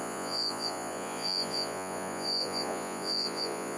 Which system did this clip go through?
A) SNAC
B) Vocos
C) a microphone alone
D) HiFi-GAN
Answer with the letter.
B